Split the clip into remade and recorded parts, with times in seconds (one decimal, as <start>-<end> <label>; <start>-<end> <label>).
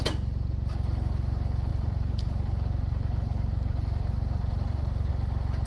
0.0-1.7 recorded; 1.7-5.1 remade; 5.1-5.7 recorded